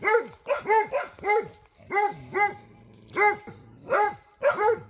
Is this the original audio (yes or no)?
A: yes